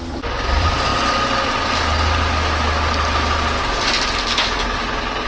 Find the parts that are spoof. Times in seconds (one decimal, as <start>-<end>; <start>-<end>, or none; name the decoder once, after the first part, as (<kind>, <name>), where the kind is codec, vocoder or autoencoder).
0.0-0.9 (vocoder, BigVGAN v2); 3.6-5.3